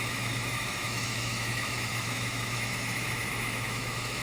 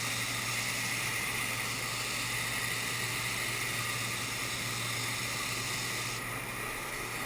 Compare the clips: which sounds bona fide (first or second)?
second